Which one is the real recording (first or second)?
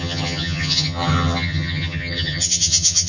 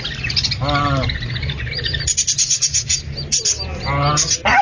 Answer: second